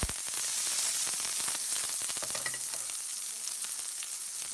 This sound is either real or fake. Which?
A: real